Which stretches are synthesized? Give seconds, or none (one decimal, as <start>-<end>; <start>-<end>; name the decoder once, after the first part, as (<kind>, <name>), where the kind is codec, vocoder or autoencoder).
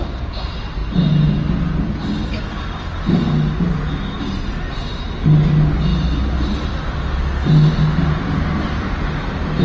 none